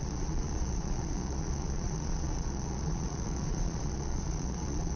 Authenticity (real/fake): fake